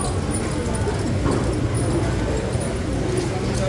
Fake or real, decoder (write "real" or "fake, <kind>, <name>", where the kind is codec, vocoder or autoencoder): real